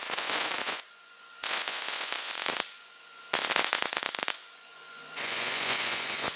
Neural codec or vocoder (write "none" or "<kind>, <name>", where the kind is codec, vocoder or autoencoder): vocoder, Vocos